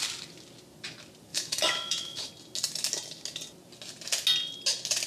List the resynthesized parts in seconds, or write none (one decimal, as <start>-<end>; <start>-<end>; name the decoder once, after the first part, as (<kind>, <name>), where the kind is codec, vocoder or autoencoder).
1.3-2.3 (autoencoder, DAC-VAE)